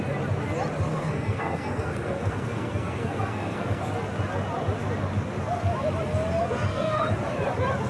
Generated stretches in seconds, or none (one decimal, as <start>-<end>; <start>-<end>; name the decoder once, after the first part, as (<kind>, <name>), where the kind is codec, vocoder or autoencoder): 0.9-3.8 (codec, SNAC); 6.4-7.0